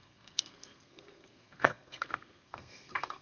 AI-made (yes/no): yes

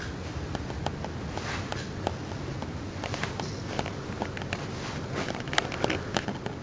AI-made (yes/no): no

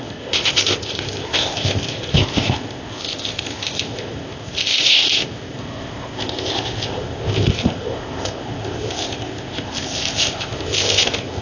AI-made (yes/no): yes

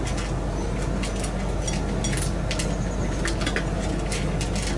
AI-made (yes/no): no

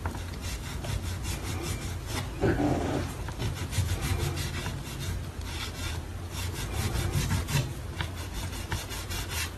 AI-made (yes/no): no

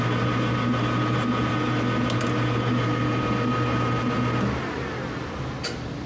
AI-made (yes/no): no